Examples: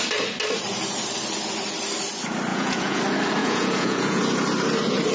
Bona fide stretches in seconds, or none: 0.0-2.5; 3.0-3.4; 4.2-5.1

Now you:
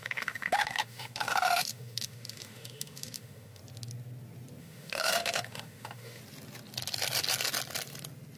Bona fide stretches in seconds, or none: 3.6-4.6; 6.2-8.4

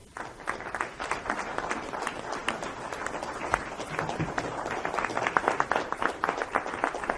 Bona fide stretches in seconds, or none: 0.0-7.2

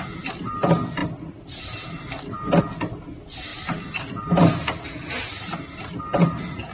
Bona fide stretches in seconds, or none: 0.0-6.7

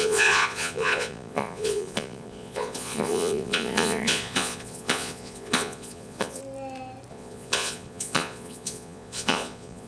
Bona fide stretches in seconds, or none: 6.4-7.1

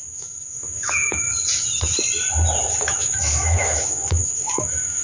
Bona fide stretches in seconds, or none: 1.3-2.8